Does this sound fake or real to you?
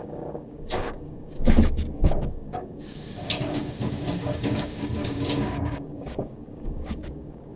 fake